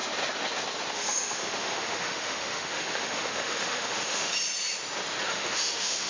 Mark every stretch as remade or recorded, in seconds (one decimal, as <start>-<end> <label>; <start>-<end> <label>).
0.0-0.9 recorded; 0.9-4.3 remade; 4.3-5.3 recorded; 5.3-6.1 remade